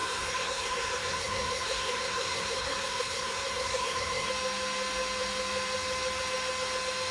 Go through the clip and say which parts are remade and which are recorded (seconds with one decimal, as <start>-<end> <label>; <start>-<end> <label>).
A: 0.0-4.3 remade; 4.3-7.1 recorded